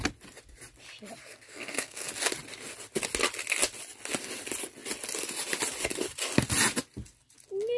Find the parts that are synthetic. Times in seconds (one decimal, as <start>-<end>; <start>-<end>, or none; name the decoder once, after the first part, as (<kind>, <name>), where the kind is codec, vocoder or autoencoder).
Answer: 1.2-2.1 (codec, SNAC)